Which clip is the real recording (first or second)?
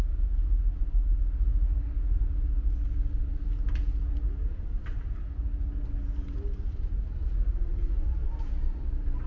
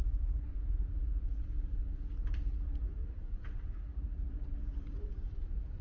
first